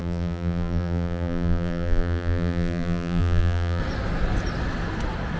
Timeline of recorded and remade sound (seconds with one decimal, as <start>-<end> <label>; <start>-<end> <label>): 0.0-3.8 remade; 3.8-5.4 recorded